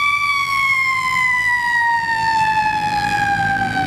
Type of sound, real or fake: fake